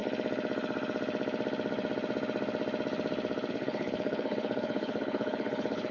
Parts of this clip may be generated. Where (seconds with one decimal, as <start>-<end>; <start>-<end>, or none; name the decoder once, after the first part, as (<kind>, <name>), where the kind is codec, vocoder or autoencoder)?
3.5-5.9 (codec, HILCodec)